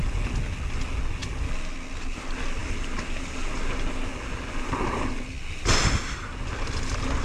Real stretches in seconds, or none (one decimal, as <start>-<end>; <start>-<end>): 0.0-7.2